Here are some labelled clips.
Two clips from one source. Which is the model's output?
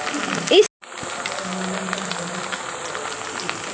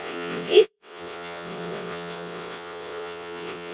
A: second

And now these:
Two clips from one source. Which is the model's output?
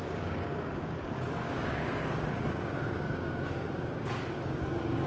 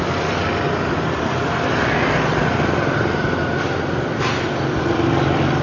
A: first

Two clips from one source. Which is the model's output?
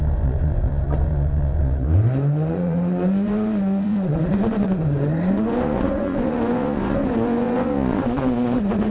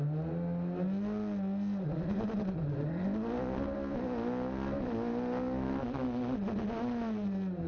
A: first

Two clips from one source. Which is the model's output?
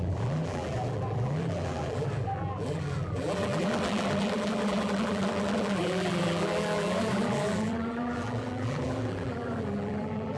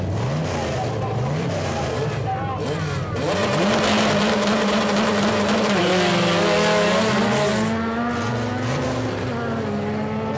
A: first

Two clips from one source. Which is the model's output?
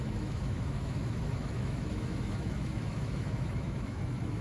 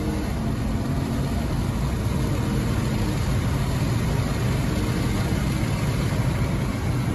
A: first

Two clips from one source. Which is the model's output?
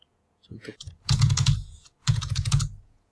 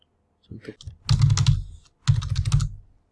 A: first